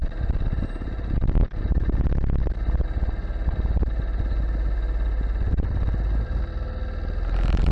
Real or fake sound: real